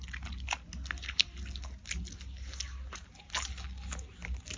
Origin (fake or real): real